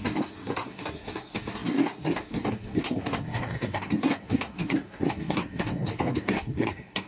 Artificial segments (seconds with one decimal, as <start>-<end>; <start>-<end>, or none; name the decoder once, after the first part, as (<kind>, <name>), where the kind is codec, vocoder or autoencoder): 0.0-7.1 (codec, SNAC)